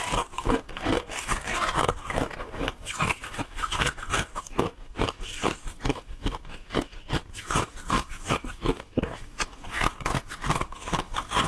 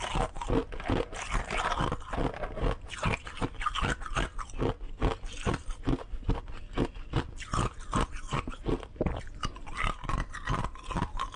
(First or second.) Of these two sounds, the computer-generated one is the first